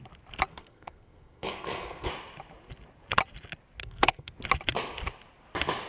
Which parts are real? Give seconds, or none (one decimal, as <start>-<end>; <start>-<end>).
0.0-0.5; 2.1-3.8; 4.3-5.9